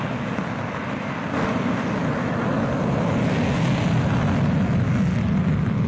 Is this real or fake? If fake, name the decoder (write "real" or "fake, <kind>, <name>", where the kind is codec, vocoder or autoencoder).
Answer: real